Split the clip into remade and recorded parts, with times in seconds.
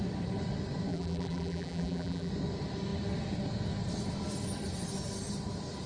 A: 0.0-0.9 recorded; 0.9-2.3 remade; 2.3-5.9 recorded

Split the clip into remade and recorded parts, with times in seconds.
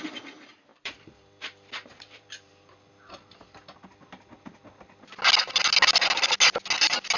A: 0.0-0.7 recorded; 0.7-2.9 remade; 2.9-7.2 recorded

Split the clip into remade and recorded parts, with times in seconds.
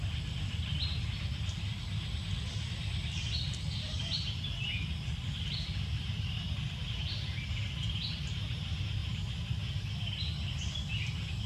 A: 0.0-11.5 recorded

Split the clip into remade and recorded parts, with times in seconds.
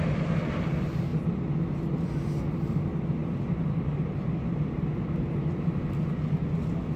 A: 0.0-3.2 recorded; 3.2-6.4 remade; 6.4-7.0 recorded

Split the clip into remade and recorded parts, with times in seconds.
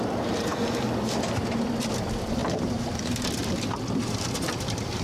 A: 0.0-2.4 remade; 2.4-2.9 recorded; 2.9-3.4 remade; 3.4-4.4 recorded; 4.4-5.0 remade